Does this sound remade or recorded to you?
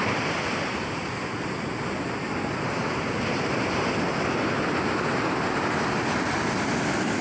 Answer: recorded